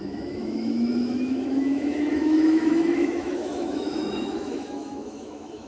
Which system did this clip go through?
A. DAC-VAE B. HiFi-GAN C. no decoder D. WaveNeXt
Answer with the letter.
A